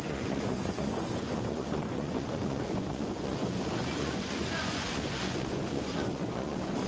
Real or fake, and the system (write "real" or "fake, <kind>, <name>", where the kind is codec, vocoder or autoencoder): fake, vocoder, Vocos